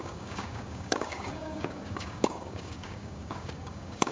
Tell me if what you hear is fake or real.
fake